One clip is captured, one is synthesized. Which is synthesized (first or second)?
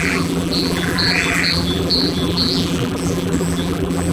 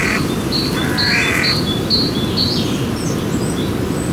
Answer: first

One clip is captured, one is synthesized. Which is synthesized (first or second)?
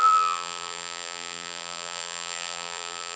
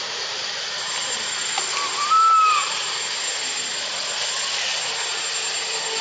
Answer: first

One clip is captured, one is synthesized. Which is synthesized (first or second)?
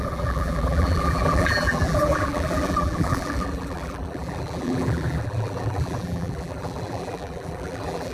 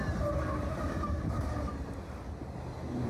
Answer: first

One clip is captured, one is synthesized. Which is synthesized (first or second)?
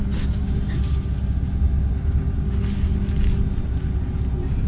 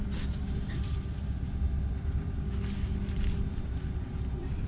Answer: second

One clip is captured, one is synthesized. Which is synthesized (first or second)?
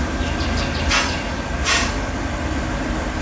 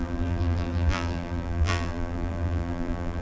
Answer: second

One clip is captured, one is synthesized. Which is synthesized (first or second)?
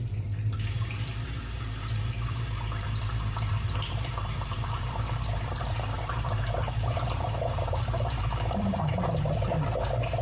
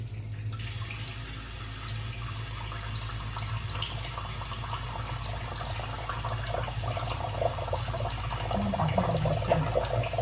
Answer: first